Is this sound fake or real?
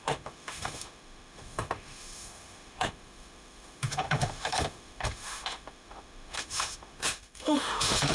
fake